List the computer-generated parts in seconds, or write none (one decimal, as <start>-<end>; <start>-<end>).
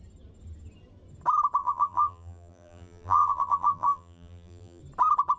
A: 1.6-4.8